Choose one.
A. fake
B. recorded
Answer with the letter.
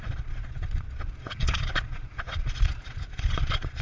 A